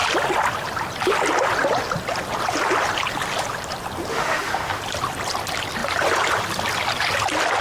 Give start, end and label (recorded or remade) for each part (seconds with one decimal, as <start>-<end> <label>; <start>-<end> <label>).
0.0-4.1 recorded; 4.1-4.8 remade; 4.8-7.6 recorded